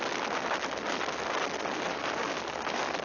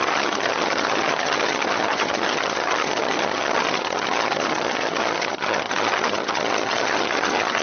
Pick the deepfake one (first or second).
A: second